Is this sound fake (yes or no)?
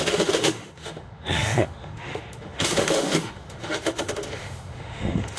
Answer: yes